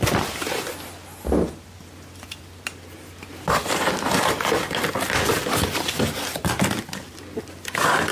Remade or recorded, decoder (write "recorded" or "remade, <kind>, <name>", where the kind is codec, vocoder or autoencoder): recorded